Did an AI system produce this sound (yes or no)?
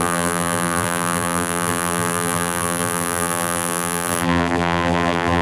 yes